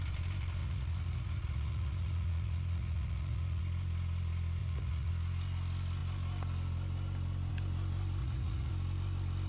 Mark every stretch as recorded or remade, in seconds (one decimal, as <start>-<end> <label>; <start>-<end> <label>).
0.0-0.6 recorded; 0.6-3.6 remade; 3.6-4.6 recorded; 4.6-5.1 remade; 5.1-8.2 recorded; 8.2-8.7 remade; 8.7-9.5 recorded